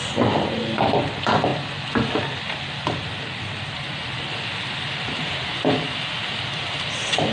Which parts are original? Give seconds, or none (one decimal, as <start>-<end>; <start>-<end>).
0.0-7.3